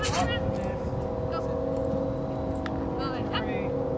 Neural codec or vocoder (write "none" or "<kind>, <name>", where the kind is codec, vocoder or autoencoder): none